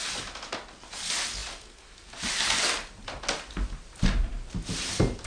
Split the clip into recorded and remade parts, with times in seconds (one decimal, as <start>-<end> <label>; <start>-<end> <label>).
0.0-5.3 recorded